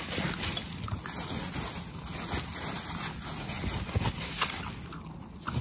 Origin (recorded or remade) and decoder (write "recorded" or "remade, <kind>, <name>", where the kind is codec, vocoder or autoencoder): recorded